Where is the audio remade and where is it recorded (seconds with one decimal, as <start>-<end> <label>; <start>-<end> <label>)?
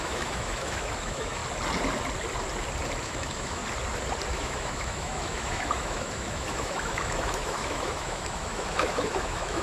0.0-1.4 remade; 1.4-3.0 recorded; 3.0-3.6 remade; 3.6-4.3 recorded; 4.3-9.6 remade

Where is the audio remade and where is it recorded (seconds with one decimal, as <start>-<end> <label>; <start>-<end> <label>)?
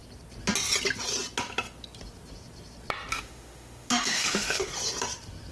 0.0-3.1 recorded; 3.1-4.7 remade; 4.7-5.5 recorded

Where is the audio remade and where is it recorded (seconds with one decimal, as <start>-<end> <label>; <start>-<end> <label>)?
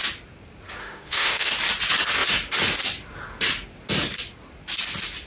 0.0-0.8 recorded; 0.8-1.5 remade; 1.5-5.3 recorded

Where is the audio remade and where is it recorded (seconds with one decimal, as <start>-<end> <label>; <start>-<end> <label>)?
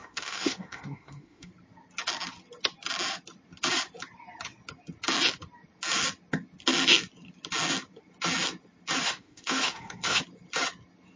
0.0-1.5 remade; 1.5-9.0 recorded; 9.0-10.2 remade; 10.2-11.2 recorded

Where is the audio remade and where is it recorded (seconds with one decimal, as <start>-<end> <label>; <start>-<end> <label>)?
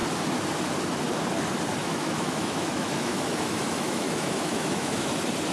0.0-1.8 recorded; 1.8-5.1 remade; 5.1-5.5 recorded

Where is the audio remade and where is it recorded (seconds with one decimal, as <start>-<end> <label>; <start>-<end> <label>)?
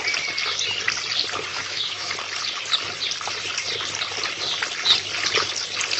0.0-1.5 recorded; 1.5-2.1 remade; 2.1-6.0 recorded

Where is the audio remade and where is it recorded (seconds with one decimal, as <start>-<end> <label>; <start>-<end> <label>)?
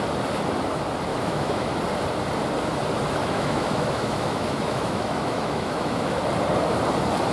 0.0-1.1 recorded; 1.1-1.7 remade; 1.7-3.2 recorded; 3.2-6.2 remade; 6.2-7.3 recorded